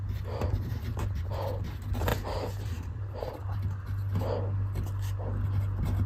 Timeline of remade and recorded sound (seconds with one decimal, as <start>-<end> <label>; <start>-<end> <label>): 0.0-6.1 recorded